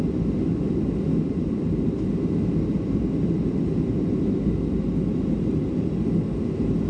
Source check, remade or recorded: recorded